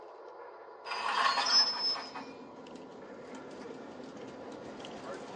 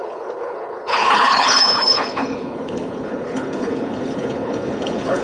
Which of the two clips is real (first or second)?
first